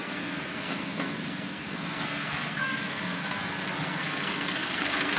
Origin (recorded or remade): remade